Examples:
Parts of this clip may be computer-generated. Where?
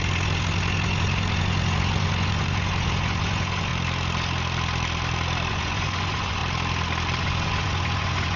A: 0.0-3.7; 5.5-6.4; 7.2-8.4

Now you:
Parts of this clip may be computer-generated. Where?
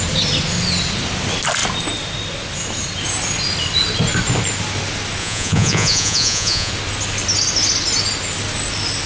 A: 5.2-6.7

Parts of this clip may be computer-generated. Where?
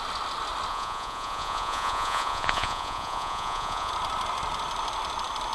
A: 0.7-3.9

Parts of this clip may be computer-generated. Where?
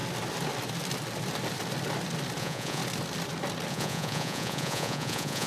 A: 2.4-2.8; 3.7-5.5